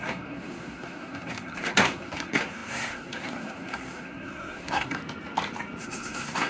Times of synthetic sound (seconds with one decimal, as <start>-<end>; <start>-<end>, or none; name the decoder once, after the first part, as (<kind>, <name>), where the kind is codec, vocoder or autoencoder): 0.0-5.0 (codec, SNAC); 5.8-6.5